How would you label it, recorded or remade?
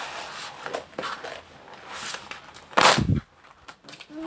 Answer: recorded